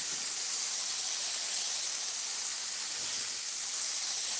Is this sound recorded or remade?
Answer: recorded